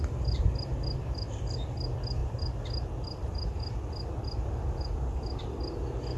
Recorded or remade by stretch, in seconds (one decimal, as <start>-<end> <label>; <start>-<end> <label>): 0.0-6.2 recorded